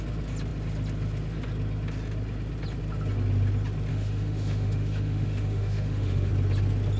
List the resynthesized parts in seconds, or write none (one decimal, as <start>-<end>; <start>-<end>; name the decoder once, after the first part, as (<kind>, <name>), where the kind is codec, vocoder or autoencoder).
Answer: 3.9-6.3 (autoencoder, DAC-VAE)